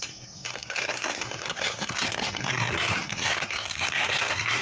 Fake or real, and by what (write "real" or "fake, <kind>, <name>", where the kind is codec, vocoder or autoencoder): fake, codec, SNAC